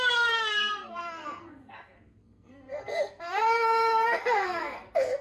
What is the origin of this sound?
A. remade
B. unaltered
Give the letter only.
A